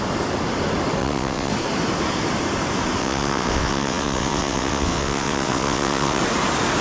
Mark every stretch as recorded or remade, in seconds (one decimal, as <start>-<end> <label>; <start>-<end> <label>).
0.0-1.0 recorded; 1.0-1.5 remade; 1.5-3.0 recorded; 3.0-6.2 remade; 6.2-6.8 recorded